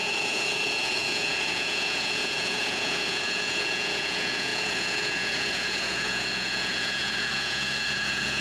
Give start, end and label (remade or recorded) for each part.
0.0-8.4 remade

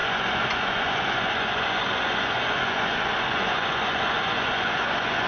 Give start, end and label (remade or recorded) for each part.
0.0-5.3 remade